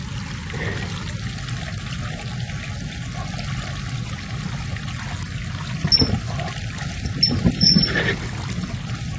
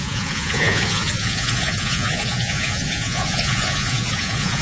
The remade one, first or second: second